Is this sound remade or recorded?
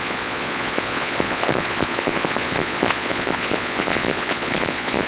remade